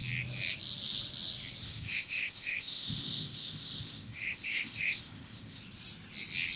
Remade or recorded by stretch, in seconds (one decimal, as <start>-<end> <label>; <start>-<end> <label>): 0.0-1.6 recorded; 1.6-5.6 remade; 5.6-6.6 recorded